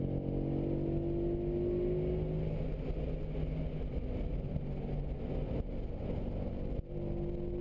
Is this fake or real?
real